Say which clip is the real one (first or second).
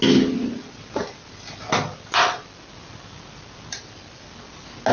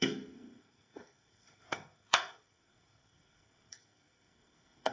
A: first